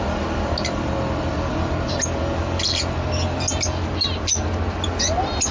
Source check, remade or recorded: recorded